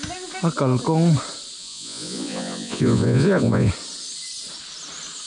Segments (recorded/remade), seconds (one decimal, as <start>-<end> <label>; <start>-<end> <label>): 0.0-1.6 recorded; 1.6-3.7 remade; 3.7-5.3 recorded